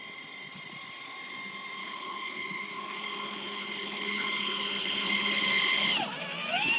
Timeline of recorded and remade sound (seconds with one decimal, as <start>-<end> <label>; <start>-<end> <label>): 0.0-1.8 recorded; 1.8-5.9 remade; 5.9-6.8 recorded